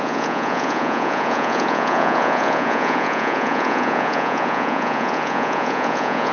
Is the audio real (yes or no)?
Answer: no